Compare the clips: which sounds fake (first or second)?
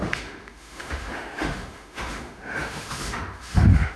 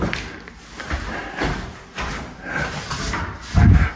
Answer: first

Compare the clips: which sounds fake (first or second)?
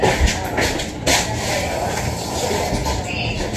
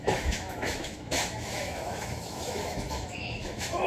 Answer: second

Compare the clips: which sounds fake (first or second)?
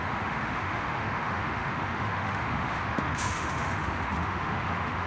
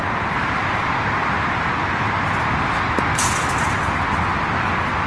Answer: first